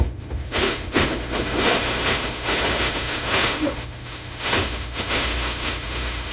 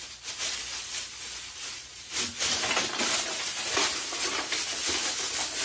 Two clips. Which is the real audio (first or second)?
second